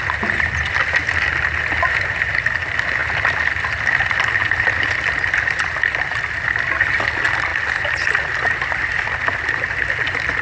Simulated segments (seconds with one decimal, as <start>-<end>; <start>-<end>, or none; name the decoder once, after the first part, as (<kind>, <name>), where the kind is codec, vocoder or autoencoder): none